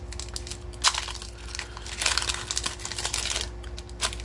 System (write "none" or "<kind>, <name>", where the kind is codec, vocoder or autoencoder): none